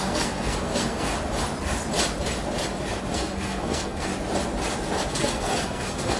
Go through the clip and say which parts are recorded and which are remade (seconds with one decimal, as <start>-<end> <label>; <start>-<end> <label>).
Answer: 0.0-1.1 remade; 1.1-3.1 recorded; 3.1-4.1 remade; 4.1-5.1 recorded; 5.1-6.2 remade